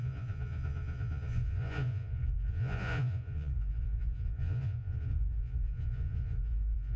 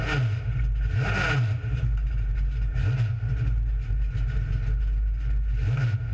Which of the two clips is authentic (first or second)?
second